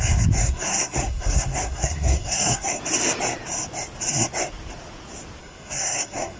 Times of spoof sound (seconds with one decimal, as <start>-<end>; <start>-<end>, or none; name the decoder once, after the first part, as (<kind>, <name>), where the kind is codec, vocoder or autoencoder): 0.4-2.8 (codec, SNAC); 5.4-6.4